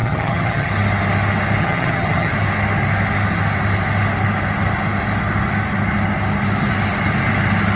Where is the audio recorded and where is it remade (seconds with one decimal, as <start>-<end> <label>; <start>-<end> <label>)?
0.0-0.7 remade; 0.7-1.6 recorded; 1.6-2.3 remade; 2.3-7.8 recorded